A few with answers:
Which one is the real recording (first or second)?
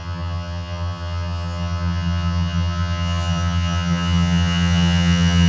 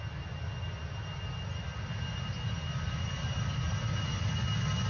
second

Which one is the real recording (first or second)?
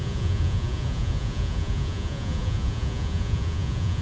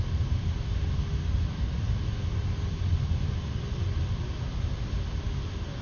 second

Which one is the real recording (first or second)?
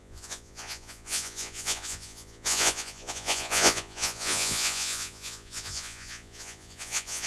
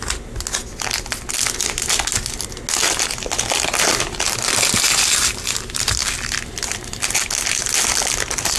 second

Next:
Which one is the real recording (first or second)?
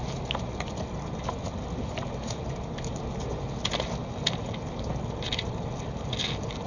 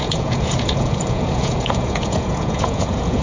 first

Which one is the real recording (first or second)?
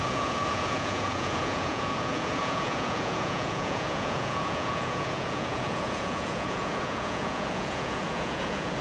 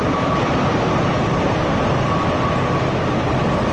second